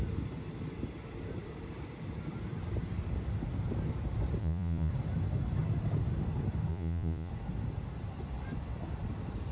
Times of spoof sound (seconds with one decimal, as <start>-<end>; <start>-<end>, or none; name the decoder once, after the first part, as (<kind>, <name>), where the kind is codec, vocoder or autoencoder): 4.4-4.9 (vocoder, Vocos); 6.7-7.3